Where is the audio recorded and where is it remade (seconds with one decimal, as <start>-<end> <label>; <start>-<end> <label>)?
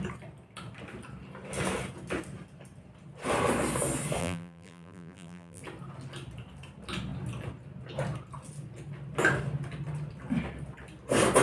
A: 0.0-4.2 recorded; 4.2-5.6 remade; 5.6-11.4 recorded